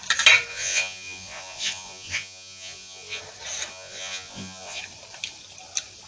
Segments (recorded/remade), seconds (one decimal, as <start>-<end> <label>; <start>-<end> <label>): 0.0-0.5 recorded; 0.5-3.2 remade; 3.2-3.7 recorded; 3.7-4.8 remade; 4.8-6.1 recorded

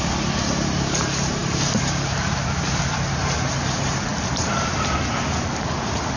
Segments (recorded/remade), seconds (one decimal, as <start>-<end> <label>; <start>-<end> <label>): 0.0-1.4 recorded; 1.4-5.1 remade; 5.1-6.2 recorded